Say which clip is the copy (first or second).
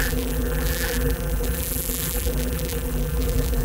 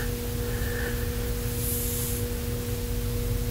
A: first